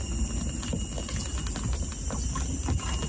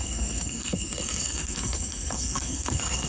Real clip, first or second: first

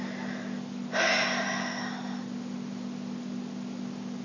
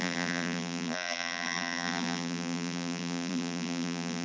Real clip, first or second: first